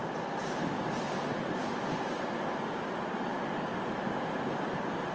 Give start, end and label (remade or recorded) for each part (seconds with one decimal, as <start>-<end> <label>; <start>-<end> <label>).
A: 0.0-5.1 recorded